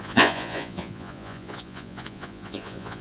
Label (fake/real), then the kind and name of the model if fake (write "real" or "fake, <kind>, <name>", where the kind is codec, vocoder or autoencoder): fake, vocoder, Vocos